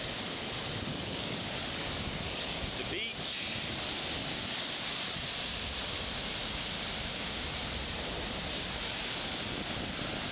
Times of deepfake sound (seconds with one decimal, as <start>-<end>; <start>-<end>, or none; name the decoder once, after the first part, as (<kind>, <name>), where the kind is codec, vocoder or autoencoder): 0.9-2.6 (codec, DAC)